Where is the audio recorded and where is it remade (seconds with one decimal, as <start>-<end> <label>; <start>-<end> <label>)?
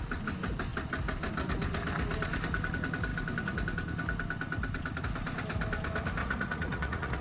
0.0-6.2 recorded; 6.2-7.2 remade